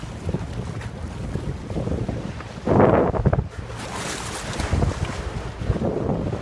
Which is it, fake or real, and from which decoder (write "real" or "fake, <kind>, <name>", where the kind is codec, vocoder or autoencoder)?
real